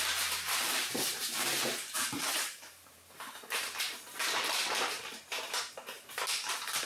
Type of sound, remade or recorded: remade